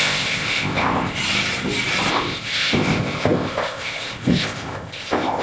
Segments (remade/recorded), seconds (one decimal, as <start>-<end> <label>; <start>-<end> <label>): 0.0-1.2 remade; 1.2-2.1 recorded; 2.1-5.4 remade